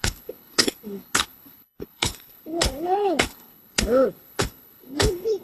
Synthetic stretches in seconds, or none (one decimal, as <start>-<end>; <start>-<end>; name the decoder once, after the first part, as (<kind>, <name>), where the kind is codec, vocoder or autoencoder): 0.0-5.4 (codec, HILCodec)